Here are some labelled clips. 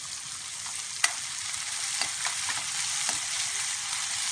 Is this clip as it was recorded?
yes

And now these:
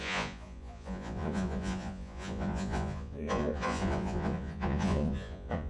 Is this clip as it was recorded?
no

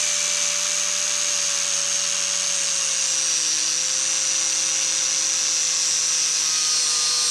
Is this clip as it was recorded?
yes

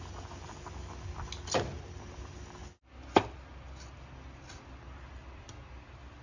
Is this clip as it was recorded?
yes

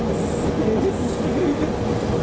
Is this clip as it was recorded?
yes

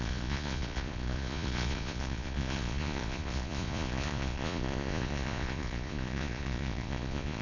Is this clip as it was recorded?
no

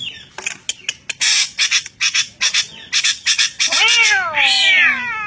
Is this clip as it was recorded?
yes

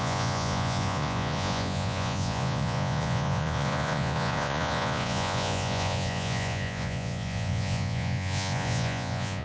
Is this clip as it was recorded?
no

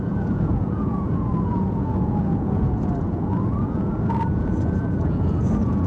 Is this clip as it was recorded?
no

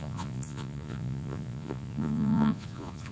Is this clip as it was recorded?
no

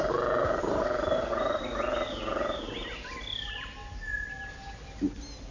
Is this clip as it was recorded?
yes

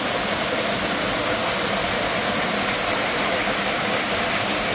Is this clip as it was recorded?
yes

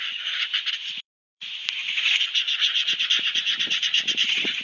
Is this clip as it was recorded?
no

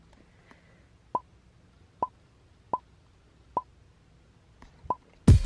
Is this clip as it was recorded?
yes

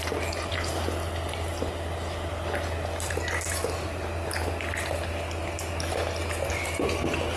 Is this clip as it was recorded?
yes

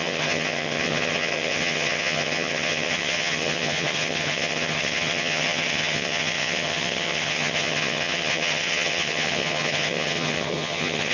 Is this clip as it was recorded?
no